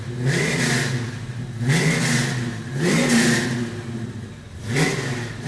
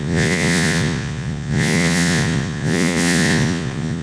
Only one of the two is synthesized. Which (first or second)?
second